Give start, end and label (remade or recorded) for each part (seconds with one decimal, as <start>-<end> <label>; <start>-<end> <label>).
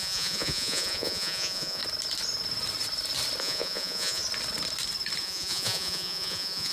0.0-1.8 remade; 1.8-3.4 recorded; 3.4-4.2 remade; 4.2-5.2 recorded; 5.2-6.7 remade